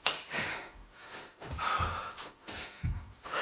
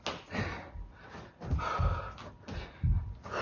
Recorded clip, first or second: second